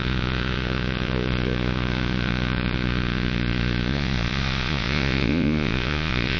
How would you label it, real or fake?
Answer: fake